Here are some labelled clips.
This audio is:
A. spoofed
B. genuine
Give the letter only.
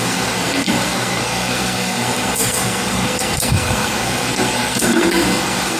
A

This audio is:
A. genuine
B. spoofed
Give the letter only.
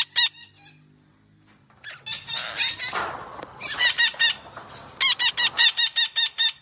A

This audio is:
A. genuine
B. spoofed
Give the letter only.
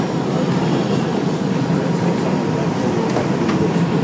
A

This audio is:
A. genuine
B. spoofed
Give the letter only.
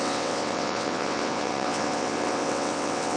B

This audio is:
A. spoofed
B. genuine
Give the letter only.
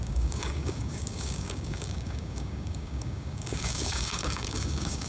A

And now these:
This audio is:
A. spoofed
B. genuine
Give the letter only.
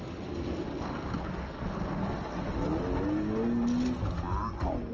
B